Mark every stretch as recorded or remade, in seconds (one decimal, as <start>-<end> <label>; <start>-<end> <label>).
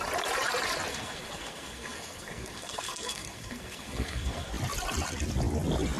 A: 0.0-0.9 recorded; 0.9-4.5 remade; 4.5-6.0 recorded